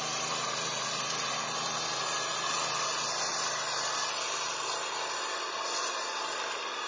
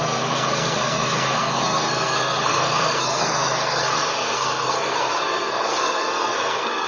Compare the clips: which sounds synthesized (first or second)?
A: second